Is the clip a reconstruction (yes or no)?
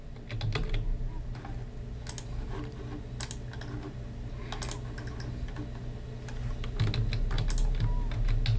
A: no